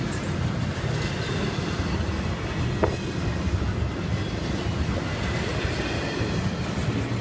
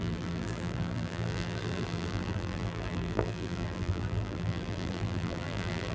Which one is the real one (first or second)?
first